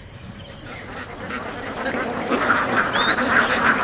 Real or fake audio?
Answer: fake